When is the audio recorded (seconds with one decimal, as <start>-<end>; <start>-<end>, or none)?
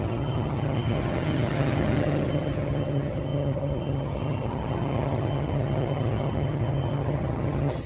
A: none